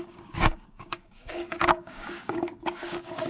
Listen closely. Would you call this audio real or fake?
fake